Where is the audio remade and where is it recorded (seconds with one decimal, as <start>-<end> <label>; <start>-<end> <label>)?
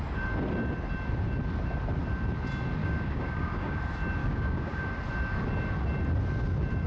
0.0-2.8 recorded; 2.8-3.8 remade; 3.8-4.2 recorded; 4.2-4.8 remade; 4.8-6.9 recorded